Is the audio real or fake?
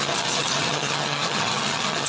fake